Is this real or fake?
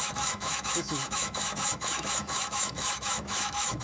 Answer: fake